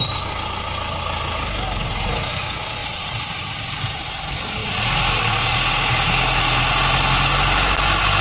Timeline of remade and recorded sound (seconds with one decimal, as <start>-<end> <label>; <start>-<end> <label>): 0.0-2.8 recorded; 2.8-4.0 remade; 4.0-8.2 recorded